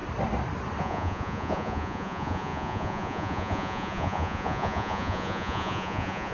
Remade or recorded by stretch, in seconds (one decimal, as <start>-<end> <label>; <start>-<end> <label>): 0.0-0.8 recorded; 0.8-6.3 remade